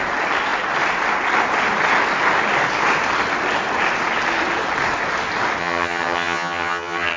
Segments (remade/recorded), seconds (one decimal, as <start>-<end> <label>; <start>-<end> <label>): 0.0-5.6 recorded; 5.6-7.2 remade